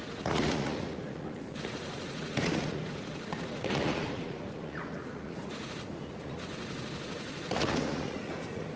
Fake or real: fake